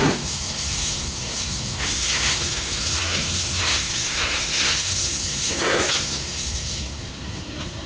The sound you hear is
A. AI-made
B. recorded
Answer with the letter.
A